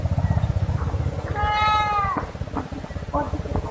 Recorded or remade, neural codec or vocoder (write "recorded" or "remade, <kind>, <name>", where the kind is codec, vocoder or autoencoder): recorded